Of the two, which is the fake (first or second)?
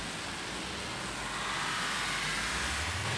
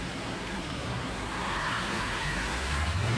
second